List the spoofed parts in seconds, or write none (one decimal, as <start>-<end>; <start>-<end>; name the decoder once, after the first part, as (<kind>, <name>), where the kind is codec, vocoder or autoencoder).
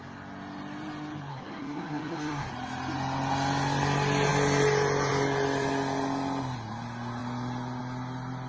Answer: 1.3-2.5 (codec, SNAC)